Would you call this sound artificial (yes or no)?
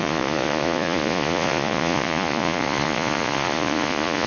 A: yes